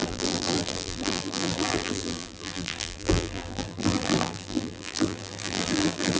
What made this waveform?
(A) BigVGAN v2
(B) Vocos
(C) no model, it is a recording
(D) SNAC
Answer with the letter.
A